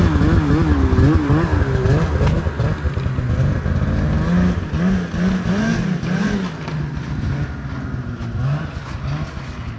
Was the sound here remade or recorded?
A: recorded